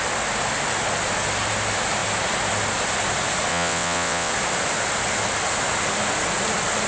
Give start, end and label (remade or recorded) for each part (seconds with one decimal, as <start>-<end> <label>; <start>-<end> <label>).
0.0-3.5 recorded; 3.5-4.3 remade; 4.3-6.9 recorded